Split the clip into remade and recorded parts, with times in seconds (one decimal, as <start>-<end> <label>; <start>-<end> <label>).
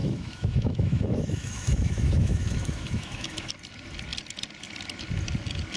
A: 0.0-3.5 remade; 3.5-5.8 recorded